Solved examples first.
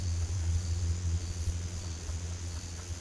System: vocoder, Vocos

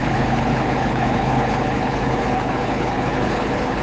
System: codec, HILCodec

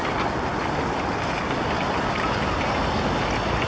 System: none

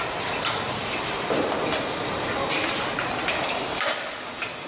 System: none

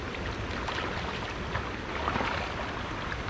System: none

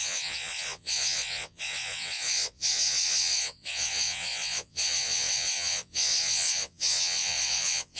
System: vocoder, WaveNeXt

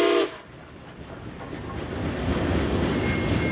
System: none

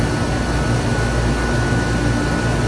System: none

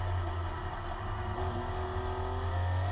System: none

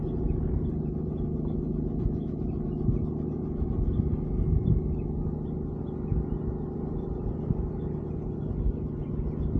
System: none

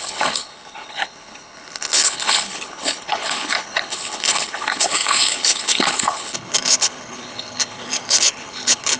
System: codec, HILCodec